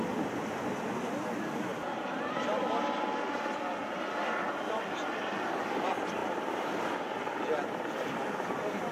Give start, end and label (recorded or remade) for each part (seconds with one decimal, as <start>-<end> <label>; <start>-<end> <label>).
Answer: 0.0-8.9 recorded